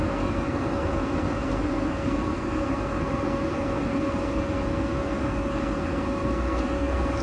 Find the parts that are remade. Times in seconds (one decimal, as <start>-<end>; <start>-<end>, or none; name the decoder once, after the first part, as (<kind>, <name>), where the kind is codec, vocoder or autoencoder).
0.0-7.2 (codec, SNAC)